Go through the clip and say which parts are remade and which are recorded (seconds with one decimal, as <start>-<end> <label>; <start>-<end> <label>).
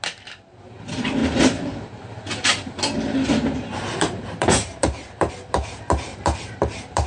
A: 0.0-1.2 recorded; 1.2-5.3 remade; 5.3-6.1 recorded; 6.1-7.1 remade